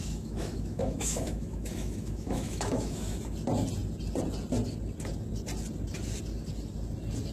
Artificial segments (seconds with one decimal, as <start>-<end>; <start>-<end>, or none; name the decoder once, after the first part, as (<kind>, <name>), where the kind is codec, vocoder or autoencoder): 0.0-3.2 (autoencoder, DAC-VAE)